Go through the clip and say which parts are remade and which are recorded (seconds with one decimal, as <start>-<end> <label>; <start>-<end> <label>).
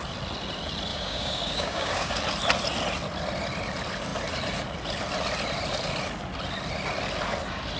0.0-0.9 recorded; 0.9-2.2 remade; 2.2-7.8 recorded